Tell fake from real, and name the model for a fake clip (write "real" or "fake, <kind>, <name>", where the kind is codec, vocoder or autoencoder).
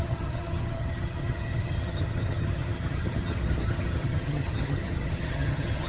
fake, vocoder, HiFi-GAN